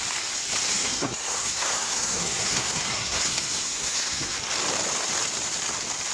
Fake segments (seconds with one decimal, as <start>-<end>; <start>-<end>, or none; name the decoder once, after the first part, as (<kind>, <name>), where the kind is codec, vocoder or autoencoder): 0.7-4.4 (codec, SNAC)